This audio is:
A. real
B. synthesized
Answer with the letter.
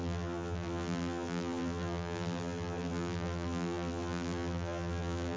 B